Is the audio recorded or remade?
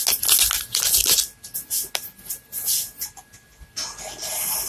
recorded